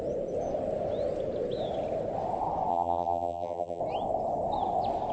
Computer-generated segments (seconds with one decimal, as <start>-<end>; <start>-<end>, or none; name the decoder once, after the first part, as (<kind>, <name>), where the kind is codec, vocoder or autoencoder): 2.7-3.8 (vocoder, BigVGAN v2)